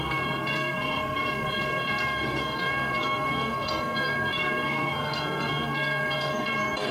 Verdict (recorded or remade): remade